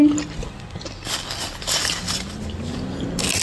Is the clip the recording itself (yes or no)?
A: yes